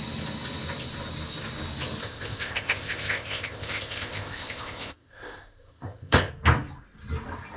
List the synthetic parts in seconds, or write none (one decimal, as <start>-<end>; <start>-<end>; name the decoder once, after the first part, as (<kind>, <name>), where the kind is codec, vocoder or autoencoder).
2.0-6.3 (codec, ZipCodec)